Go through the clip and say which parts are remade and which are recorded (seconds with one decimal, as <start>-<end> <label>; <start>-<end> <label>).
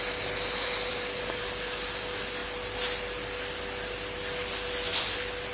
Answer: 0.0-0.9 recorded; 0.9-1.4 remade; 1.4-5.5 recorded